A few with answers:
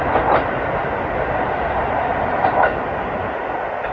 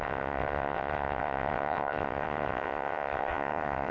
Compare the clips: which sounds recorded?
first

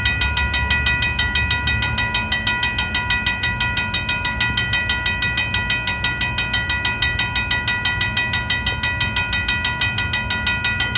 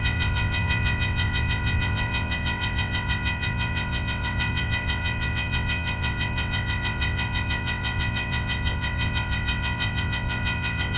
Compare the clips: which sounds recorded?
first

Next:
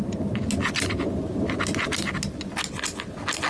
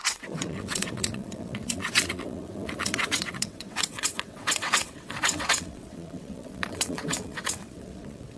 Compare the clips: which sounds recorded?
first